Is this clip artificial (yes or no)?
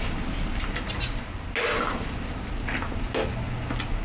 no